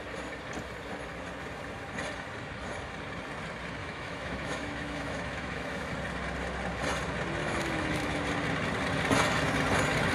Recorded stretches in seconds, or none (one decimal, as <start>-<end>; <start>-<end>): 0.0-3.8; 5.9-7.4; 8.2-10.1